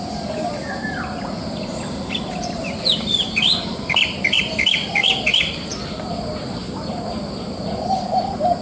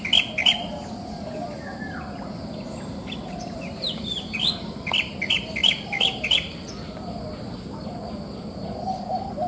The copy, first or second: first